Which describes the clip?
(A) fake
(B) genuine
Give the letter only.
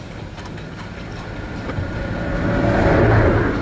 B